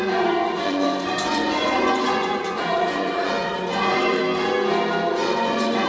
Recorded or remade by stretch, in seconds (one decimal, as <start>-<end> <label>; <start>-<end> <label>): 0.0-4.2 remade; 4.2-5.1 recorded; 5.1-5.9 remade